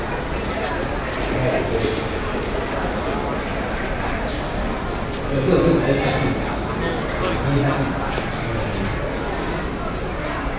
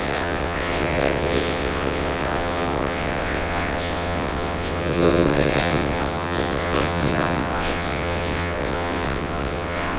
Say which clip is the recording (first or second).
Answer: first